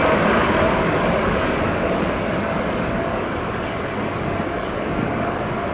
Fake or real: fake